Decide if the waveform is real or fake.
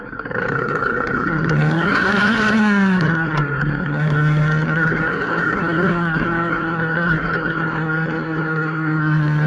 fake